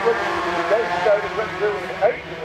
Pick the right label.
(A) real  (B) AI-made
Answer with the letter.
B